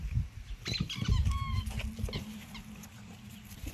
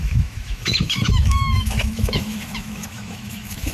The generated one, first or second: second